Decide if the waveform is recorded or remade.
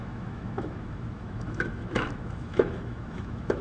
remade